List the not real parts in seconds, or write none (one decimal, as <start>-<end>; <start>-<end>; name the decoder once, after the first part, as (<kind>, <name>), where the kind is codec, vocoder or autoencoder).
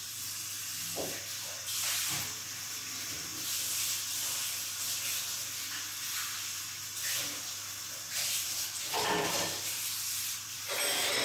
0.0-3.3 (vocoder, BigVGAN v2); 8.3-11.2